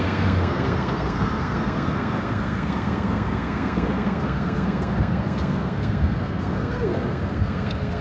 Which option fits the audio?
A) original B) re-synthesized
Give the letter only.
B